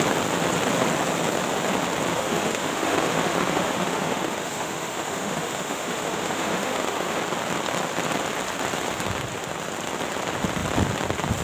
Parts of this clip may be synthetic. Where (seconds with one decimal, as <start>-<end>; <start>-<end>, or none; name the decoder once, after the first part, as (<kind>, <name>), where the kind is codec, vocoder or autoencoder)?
2.1-7.2 (autoencoder, DAC-VAE)